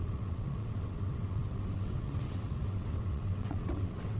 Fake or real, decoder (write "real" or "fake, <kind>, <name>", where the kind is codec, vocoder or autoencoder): fake, vocoder, WaveNeXt